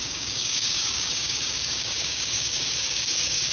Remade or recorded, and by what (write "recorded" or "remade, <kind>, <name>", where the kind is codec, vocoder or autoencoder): remade, codec, DAC